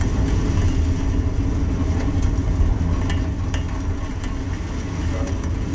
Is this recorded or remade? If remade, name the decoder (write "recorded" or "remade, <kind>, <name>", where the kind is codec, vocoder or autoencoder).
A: recorded